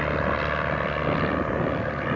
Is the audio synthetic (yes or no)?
no